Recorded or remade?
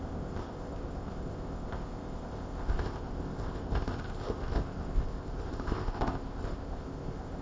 remade